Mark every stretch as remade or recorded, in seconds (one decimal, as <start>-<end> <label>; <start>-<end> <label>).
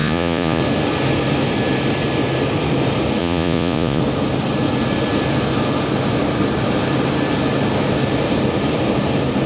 0.0-0.6 remade; 0.6-3.2 recorded; 3.2-4.0 remade; 4.0-9.5 recorded